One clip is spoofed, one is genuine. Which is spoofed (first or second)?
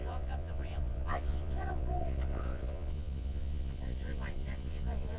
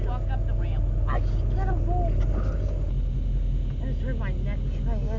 first